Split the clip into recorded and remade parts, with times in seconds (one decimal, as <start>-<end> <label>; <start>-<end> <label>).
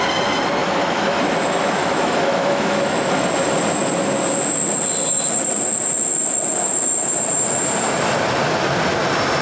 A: 0.0-0.6 recorded; 0.6-1.2 remade; 1.2-1.8 recorded; 1.8-3.1 remade; 3.1-9.4 recorded